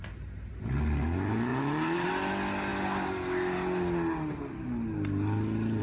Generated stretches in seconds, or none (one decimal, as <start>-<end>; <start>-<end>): 1.5-2.1